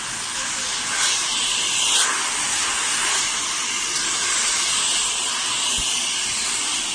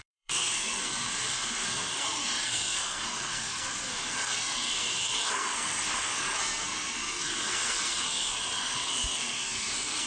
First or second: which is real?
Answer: first